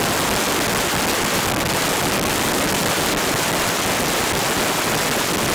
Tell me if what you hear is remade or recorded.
recorded